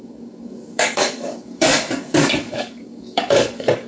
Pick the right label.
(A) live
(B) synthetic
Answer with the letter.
B